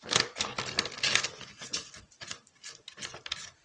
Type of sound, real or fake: real